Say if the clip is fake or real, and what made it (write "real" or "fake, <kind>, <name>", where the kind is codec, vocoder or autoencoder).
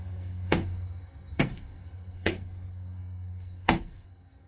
fake, codec, SNAC